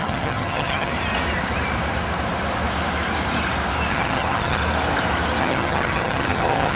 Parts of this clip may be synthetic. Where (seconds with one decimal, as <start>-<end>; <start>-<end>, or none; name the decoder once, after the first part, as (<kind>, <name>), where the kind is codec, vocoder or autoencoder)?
0.0-0.9 (vocoder, HiFi-GAN); 3.9-4.6; 5.4-6.8

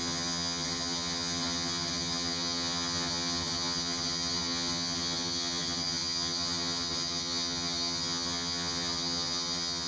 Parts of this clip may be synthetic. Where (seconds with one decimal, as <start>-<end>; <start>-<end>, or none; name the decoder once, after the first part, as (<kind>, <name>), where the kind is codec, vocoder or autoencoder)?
0.0-9.9 (vocoder, HiFi-GAN)